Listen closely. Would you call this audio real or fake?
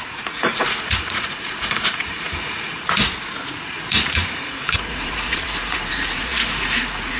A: fake